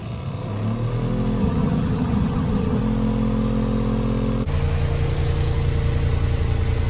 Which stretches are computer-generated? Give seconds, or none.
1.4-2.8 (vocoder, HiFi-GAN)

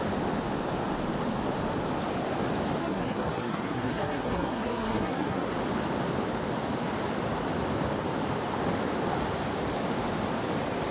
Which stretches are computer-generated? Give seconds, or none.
2.8-5.5 (codec, SNAC)

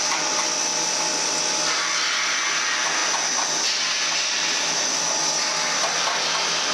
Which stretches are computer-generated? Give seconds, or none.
none

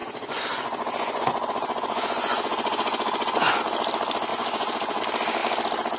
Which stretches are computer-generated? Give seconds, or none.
0.0-3.6 (vocoder, Vocos); 4.3-5.0

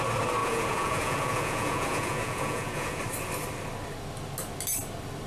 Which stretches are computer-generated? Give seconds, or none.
0.4-3.0 (vocoder, Vocos)

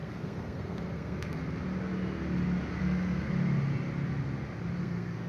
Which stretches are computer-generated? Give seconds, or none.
0.0-1.4 (codec, SNAC); 2.8-3.3; 4.8-5.3

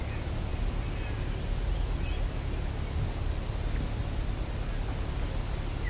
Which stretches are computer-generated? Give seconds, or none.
none